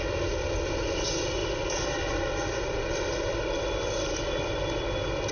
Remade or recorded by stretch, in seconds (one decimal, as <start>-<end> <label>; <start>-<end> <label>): 0.0-5.3 recorded